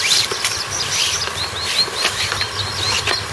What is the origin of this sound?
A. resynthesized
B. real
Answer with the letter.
B